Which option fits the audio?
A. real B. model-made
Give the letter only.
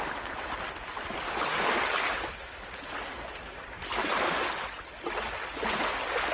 A